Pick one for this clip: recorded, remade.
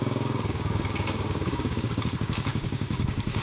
remade